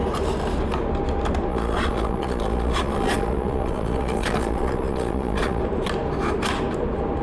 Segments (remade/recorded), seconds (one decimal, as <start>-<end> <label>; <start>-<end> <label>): 0.0-1.5 recorded; 1.5-5.6 remade; 5.6-7.2 recorded